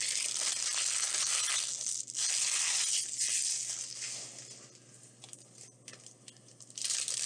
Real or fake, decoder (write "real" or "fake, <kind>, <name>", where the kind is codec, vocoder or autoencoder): real